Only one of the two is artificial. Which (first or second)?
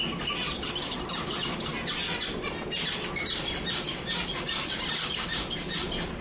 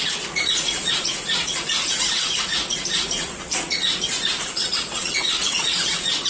second